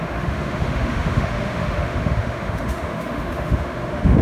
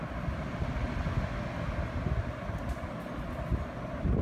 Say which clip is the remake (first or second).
first